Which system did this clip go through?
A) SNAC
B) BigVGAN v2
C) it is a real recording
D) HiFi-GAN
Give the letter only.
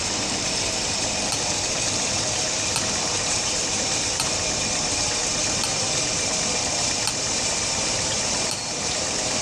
B